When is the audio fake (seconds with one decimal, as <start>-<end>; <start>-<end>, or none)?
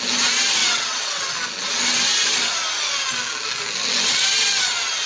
0.6-1.2